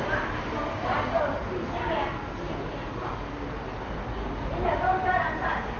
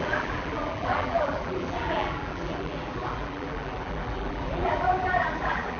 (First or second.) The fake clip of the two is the second